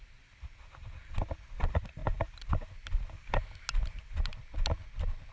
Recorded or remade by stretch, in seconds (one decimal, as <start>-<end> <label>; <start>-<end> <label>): 0.0-5.3 recorded